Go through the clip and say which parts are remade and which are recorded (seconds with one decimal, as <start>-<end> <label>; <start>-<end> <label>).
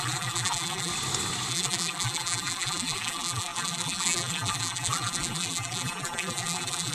0.0-0.9 remade; 0.9-1.5 recorded; 1.5-6.9 remade